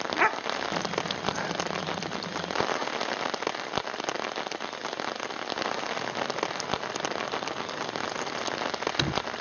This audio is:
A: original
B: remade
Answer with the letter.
A